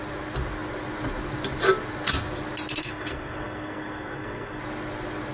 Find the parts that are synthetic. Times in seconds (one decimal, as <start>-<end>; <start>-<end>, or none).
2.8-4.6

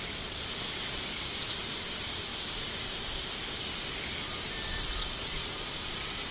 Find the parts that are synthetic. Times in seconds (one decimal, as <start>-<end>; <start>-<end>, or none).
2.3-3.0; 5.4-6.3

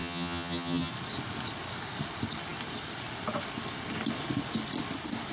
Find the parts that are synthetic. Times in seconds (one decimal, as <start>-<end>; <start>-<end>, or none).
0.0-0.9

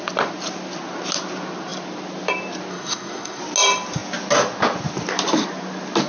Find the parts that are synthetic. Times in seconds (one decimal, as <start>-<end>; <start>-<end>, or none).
2.7-3.4